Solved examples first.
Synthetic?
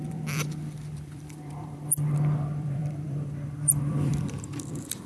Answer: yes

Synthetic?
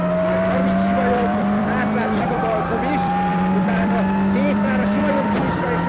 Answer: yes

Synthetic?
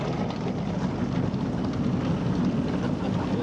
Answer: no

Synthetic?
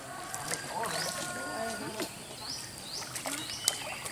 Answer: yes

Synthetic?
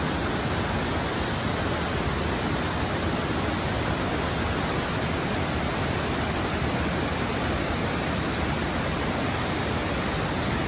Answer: no